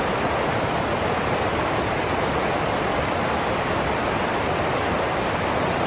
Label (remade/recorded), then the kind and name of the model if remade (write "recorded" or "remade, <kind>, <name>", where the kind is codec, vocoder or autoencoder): recorded